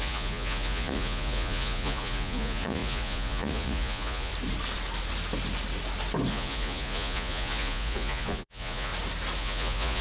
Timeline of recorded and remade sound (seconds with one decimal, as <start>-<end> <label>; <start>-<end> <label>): 0.0-4.3 remade; 4.3-6.3 recorded; 6.3-8.9 remade; 8.9-9.4 recorded; 9.4-10.0 remade